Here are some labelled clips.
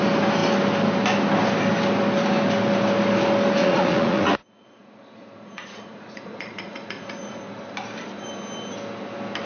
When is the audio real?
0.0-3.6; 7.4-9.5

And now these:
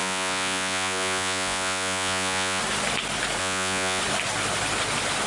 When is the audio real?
2.6-3.4; 4.0-5.3

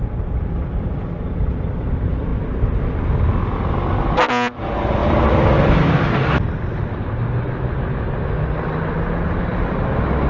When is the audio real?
0.0-10.3

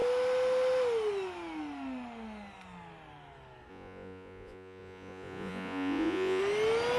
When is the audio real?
0.0-3.7; 6.4-7.0

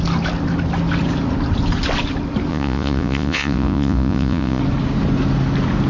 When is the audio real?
0.0-2.5; 4.6-5.9

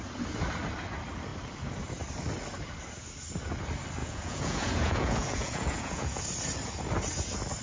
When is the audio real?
0.0-4.0; 6.2-7.6